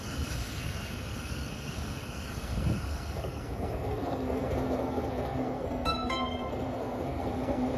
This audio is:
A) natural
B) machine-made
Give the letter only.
B